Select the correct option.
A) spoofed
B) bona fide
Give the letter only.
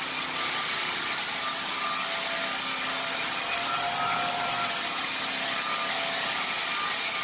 B